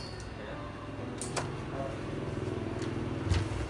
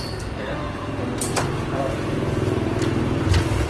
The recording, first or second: first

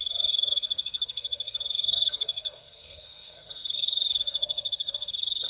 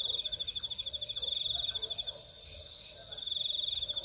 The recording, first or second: second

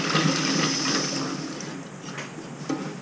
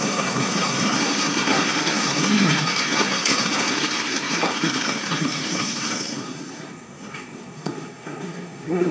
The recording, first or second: first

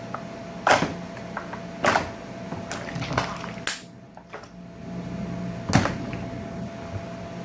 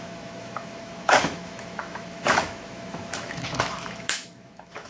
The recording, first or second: first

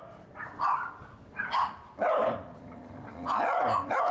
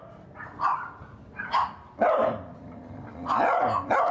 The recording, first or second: second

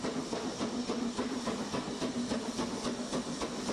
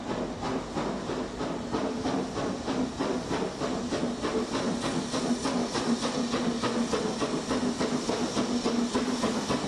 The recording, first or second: second